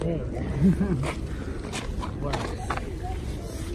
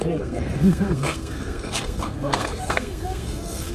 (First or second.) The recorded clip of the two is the first